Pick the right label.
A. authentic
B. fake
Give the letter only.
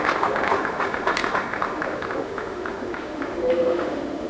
B